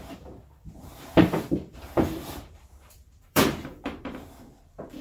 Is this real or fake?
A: fake